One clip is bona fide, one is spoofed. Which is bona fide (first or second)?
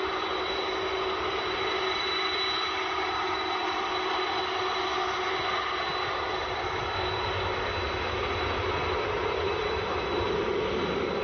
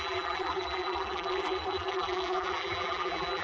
first